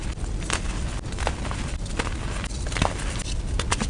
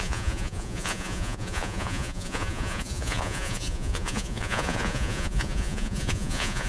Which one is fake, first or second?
second